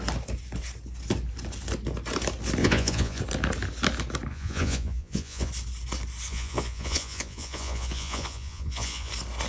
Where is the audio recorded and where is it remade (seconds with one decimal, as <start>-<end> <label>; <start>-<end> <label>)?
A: 0.0-2.6 recorded; 2.6-3.2 remade; 3.2-4.3 recorded; 4.3-5.5 remade; 5.5-6.3 recorded; 6.3-9.1 remade; 9.1-9.5 recorded